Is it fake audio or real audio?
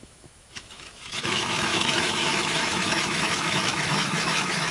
fake